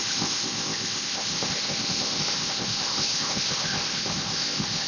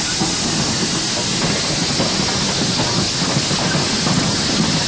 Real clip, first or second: second